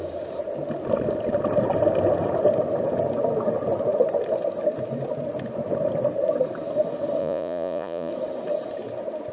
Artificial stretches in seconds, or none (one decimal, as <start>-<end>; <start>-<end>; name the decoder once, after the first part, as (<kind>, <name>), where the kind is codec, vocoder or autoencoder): 7.2-8.1 (vocoder, Vocos)